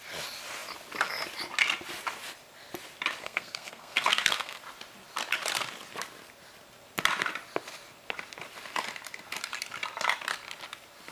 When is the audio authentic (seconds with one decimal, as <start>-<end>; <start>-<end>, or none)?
0.0-3.2; 4.6-11.1

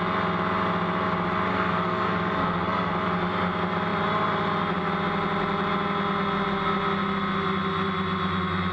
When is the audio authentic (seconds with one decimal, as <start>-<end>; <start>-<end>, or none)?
0.0-1.5; 2.9-8.7

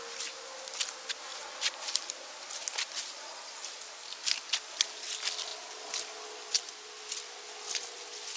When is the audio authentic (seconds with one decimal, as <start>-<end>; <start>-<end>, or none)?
0.0-8.4

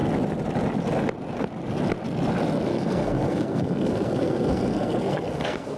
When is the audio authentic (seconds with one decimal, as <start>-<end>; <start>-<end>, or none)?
0.0-2.7

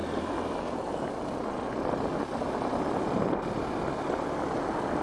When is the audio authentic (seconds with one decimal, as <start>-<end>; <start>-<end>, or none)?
0.0-5.0

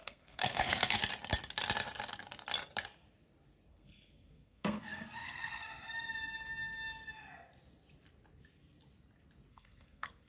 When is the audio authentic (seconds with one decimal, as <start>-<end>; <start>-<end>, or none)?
1.0-3.7; 5.7-9.5